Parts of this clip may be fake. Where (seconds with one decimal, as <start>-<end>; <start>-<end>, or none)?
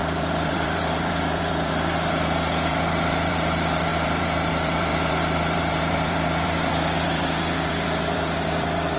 0.0-9.0